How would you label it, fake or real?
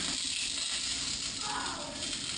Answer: real